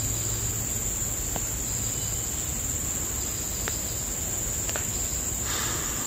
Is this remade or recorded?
recorded